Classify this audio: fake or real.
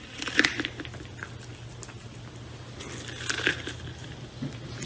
real